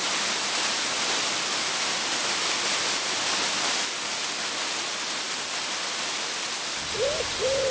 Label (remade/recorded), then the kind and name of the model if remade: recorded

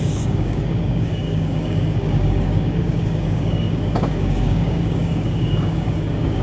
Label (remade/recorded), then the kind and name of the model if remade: remade, codec, DAC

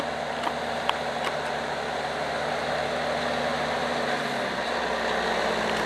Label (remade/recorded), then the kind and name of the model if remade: recorded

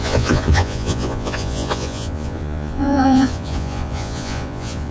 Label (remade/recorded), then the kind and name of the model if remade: remade, vocoder, Vocos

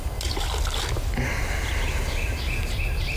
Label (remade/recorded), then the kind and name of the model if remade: recorded